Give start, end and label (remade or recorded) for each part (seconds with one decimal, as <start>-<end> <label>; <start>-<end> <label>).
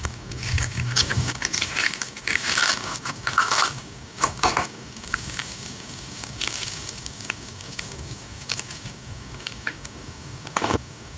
0.0-11.2 remade